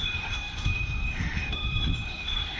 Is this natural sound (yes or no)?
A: no